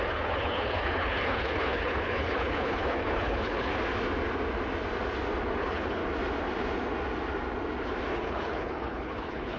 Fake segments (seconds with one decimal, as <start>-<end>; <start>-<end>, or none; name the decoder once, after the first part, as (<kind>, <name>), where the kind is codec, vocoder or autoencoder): 0.0-3.7 (codec, HILCodec); 5.6-6.0; 8.1-9.6